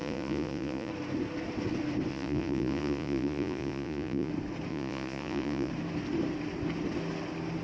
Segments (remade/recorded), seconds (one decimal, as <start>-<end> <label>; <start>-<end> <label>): 0.0-0.9 remade; 0.9-2.1 recorded; 2.1-4.3 remade; 4.3-4.7 recorded; 4.7-5.7 remade; 5.7-7.6 recorded